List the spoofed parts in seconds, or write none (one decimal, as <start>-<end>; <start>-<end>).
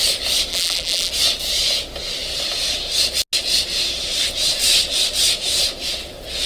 0.5-1.1